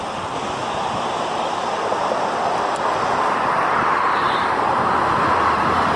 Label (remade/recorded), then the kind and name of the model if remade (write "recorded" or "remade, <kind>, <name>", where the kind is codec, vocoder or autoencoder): remade, vocoder, BigVGAN v2